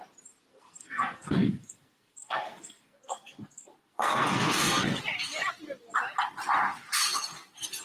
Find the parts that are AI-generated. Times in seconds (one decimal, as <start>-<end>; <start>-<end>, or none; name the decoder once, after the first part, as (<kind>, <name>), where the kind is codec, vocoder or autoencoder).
0.5-5.0 (codec, SNAC)